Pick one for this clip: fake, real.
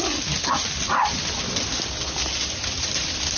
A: real